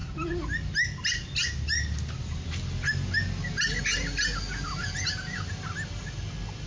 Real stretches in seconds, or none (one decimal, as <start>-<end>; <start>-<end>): 0.0-6.7